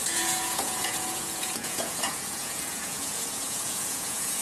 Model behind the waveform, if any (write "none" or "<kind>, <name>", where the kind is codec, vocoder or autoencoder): vocoder, Vocos